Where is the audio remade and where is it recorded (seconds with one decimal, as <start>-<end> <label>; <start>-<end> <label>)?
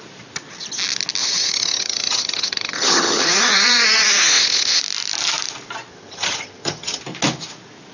0.0-1.2 recorded; 1.2-4.8 remade; 4.8-5.9 recorded; 5.9-7.0 remade; 7.0-7.9 recorded